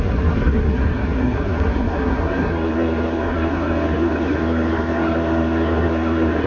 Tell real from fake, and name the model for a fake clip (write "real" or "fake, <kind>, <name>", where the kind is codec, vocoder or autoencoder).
fake, codec, SNAC